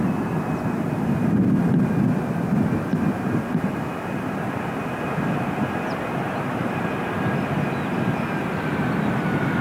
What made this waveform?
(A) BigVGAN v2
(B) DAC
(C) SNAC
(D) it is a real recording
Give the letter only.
D